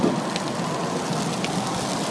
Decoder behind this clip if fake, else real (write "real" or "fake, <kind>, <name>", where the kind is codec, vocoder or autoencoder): real